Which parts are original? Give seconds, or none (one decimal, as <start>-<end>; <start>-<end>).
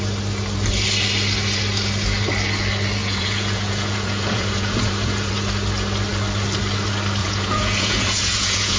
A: 0.0-3.0; 5.3-7.2